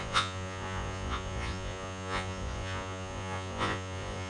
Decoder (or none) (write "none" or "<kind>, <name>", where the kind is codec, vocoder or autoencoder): vocoder, Vocos